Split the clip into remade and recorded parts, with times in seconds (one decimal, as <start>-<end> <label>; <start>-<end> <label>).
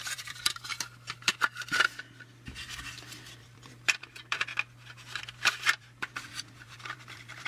0.0-0.7 remade; 0.7-3.4 recorded; 3.4-4.5 remade; 4.5-5.2 recorded; 5.2-7.5 remade